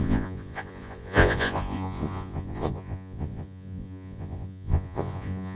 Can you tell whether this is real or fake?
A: fake